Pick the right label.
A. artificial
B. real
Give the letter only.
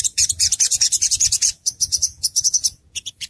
A